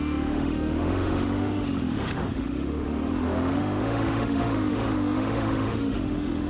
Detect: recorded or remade remade